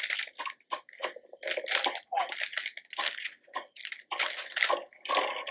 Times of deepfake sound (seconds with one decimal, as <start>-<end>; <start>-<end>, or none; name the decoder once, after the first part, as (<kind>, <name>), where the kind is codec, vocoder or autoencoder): 3.2-3.8 (vocoder, Vocos)